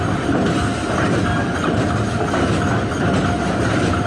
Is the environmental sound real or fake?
real